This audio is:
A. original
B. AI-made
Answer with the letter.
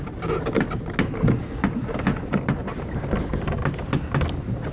A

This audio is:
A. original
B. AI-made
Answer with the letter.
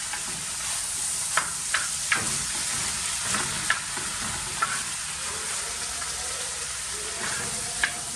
A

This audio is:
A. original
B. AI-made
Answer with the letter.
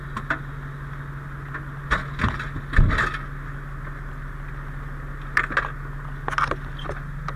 A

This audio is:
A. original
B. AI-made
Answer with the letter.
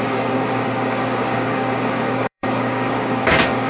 B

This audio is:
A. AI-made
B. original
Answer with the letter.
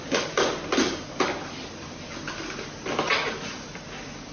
B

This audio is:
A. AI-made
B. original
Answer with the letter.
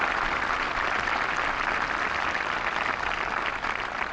B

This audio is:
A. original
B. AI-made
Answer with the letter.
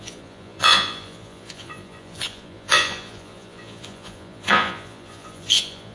B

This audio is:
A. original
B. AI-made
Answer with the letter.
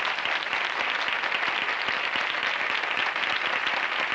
A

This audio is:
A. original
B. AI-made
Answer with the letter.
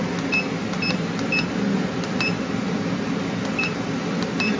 A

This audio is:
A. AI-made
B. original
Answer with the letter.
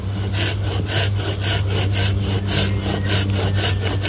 B